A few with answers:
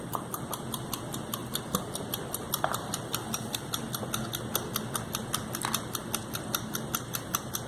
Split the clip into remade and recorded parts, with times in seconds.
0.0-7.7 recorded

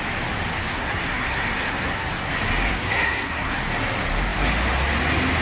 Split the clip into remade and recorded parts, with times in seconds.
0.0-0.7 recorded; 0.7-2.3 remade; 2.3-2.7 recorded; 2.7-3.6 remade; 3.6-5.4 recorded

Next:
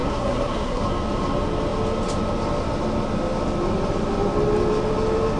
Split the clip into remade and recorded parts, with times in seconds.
0.0-0.8 remade; 0.8-5.4 recorded

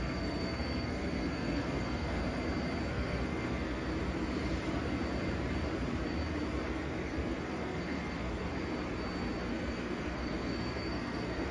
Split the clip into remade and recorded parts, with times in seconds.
0.0-2.2 remade; 2.2-2.9 recorded; 2.9-3.9 remade; 3.9-6.7 recorded; 6.7-8.5 remade; 8.5-9.5 recorded; 9.5-11.5 remade

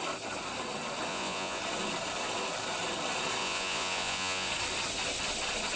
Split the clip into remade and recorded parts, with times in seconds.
0.0-1.1 recorded; 1.1-1.6 remade; 1.6-3.4 recorded; 3.4-4.5 remade; 4.5-5.8 recorded